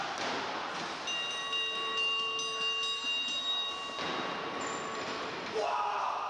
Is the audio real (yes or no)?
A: yes